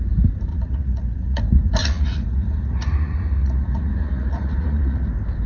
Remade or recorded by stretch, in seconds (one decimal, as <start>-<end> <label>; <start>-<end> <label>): 0.0-0.5 recorded; 0.5-1.4 remade; 1.4-1.8 recorded; 1.8-5.1 remade; 5.1-5.5 recorded